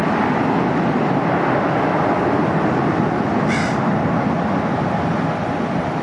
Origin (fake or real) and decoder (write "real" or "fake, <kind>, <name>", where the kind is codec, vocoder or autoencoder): real